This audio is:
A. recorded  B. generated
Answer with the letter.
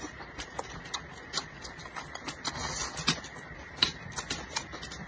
A